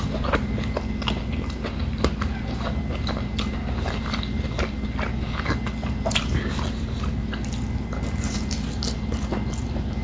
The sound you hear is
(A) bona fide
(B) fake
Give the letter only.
A